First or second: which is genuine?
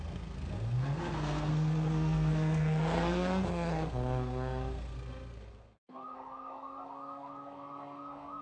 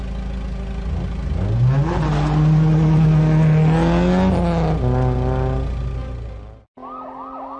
second